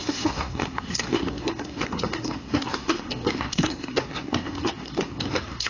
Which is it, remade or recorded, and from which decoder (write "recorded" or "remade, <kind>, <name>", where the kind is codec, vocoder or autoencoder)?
remade, codec, SNAC